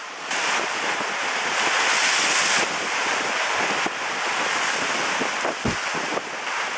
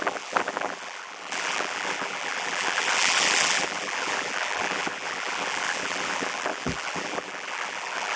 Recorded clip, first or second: first